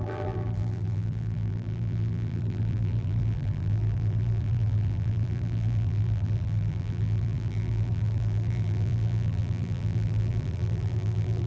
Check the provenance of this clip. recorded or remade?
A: remade